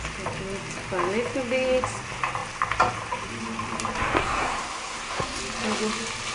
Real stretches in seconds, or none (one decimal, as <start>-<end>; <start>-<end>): 0.0-4.2; 5.4-6.3